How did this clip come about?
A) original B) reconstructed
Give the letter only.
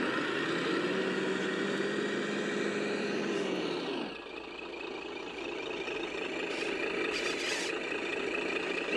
A